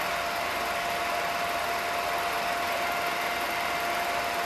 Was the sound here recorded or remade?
remade